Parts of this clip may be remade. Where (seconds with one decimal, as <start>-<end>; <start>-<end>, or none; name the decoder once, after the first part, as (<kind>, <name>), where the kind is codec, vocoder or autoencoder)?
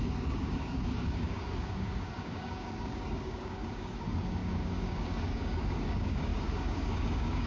0.0-7.5 (codec, DAC)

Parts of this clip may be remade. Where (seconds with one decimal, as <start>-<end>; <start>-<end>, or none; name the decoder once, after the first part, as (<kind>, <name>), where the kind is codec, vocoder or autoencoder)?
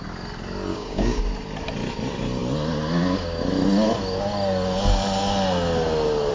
0.7-1.2 (codec, DAC)